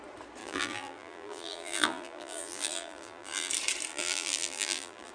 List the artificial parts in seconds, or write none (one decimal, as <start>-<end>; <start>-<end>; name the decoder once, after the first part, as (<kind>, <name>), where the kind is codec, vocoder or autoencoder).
0.4-3.5 (vocoder, BigVGAN v2); 3.9-5.1